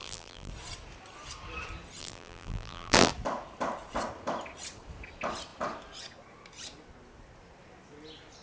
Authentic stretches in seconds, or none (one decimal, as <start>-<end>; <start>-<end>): 0.5-2.0; 3.1-8.4